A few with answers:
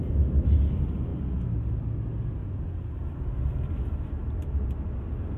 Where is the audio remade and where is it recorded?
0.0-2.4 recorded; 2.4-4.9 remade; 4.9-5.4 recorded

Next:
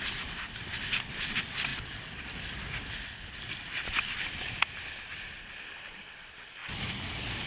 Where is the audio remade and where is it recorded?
0.0-7.5 recorded

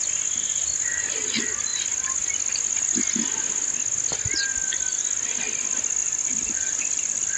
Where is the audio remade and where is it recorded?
0.0-6.0 recorded; 6.0-7.4 remade

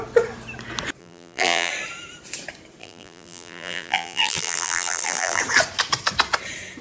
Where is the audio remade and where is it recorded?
0.0-1.0 recorded; 1.0-1.7 remade; 1.7-2.8 recorded; 2.8-5.4 remade; 5.4-6.8 recorded